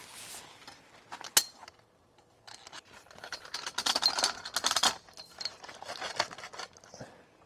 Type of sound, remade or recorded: recorded